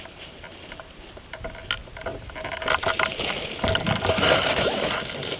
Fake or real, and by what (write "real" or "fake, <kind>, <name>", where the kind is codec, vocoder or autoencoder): real